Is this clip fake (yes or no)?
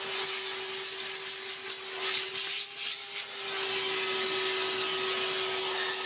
no